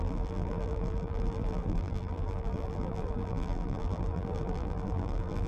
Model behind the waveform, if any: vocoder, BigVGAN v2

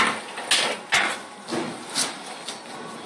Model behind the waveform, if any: none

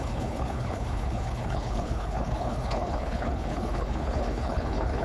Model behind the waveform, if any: codec, HILCodec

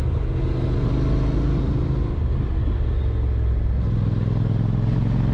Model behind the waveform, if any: none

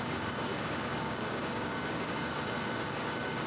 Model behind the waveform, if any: codec, DAC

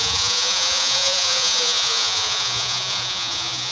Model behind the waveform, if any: vocoder, Vocos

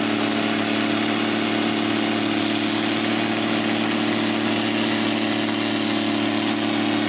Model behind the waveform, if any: none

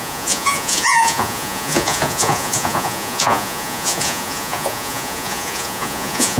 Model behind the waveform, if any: vocoder, Vocos